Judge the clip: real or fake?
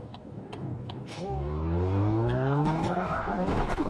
fake